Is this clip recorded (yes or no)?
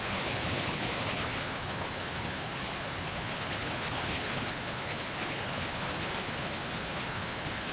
no